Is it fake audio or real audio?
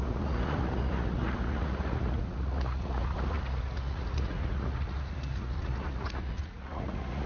fake